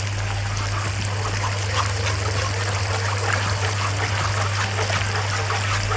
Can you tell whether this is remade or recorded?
recorded